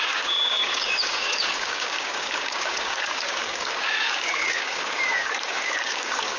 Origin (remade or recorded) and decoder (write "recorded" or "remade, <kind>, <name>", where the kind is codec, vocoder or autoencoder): remade, codec, DAC